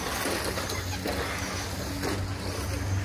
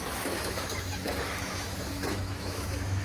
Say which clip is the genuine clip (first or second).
first